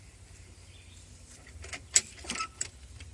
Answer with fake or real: fake